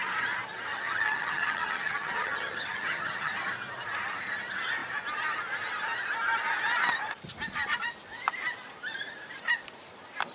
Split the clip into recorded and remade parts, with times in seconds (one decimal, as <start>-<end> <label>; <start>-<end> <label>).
0.0-0.7 recorded; 0.7-3.3 remade; 3.3-10.3 recorded